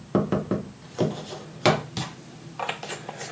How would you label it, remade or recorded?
recorded